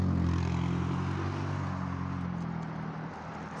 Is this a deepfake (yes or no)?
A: no